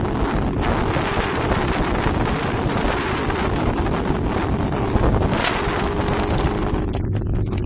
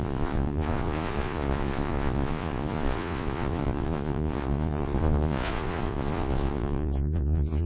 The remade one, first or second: second